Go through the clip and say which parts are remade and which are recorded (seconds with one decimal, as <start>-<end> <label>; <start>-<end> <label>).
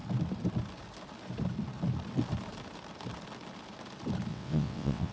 0.0-4.3 recorded; 4.3-5.1 remade